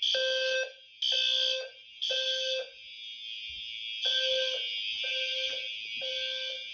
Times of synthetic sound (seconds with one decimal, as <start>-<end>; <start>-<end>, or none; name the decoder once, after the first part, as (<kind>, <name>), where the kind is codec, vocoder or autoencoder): none